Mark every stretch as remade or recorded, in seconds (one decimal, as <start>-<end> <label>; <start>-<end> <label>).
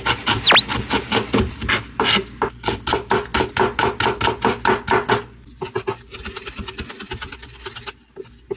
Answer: 0.0-8.6 recorded